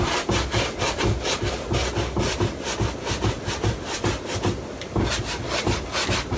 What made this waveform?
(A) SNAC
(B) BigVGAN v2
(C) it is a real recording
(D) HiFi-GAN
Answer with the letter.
C